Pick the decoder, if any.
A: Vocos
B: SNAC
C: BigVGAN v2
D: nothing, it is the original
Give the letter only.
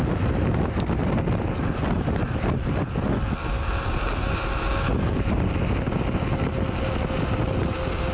D